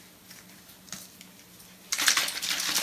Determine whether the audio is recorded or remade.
recorded